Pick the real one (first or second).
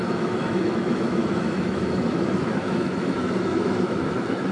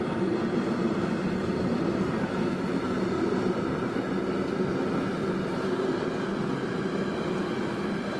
second